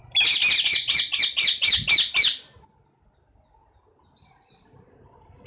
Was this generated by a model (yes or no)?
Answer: no